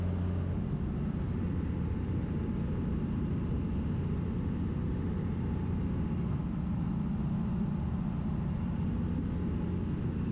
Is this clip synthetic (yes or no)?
no